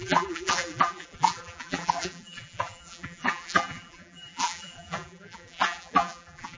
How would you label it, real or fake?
fake